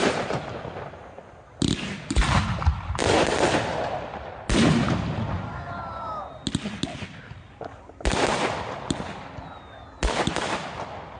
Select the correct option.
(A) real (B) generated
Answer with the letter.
A